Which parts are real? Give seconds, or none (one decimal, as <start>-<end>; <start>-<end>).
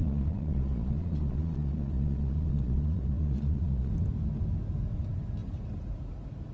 3.9-6.5